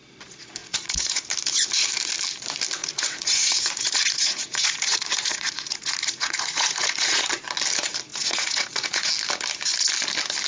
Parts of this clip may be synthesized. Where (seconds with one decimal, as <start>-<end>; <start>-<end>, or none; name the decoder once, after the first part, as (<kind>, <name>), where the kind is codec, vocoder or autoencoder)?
0.6-1.2 (vocoder, Vocos); 2.8-7.3; 8.1-9.1